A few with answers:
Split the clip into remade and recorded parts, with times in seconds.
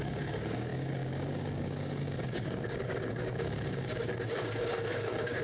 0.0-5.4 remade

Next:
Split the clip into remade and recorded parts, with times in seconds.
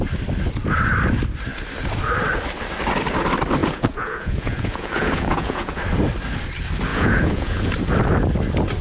0.0-3.6 recorded; 3.6-5.8 remade; 5.8-6.9 recorded; 6.9-7.6 remade; 7.6-8.8 recorded